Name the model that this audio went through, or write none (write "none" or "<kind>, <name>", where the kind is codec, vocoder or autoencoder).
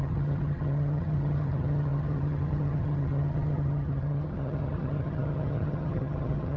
vocoder, HiFi-GAN